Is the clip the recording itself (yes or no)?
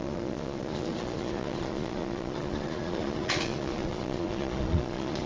no